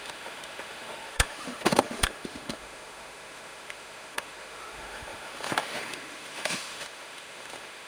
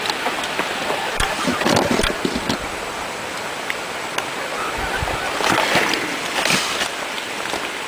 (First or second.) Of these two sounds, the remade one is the first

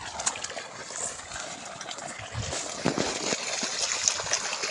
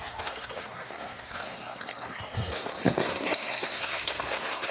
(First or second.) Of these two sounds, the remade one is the second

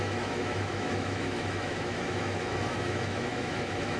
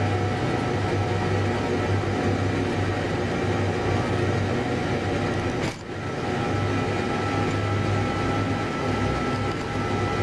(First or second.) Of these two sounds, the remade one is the first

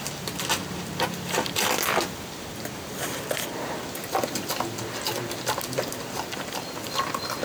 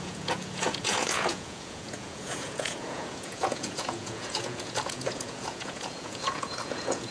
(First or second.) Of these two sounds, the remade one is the second